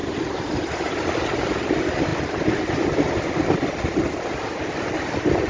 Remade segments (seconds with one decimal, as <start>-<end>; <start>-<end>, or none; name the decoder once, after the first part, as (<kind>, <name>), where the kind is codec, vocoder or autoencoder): 0.0-0.9 (vocoder, BigVGAN v2)